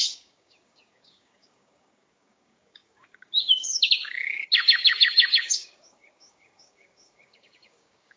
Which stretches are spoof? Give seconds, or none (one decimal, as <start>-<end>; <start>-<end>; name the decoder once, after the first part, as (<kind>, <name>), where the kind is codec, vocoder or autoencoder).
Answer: 0.0-8.2 (codec, DAC)